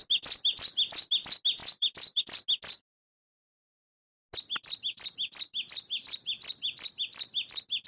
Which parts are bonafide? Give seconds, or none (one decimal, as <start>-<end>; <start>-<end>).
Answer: 0.0-1.6; 2.2-7.9